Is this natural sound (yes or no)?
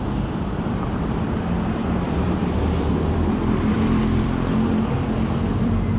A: no